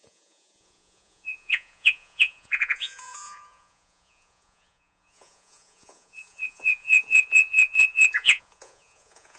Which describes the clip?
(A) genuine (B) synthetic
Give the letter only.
B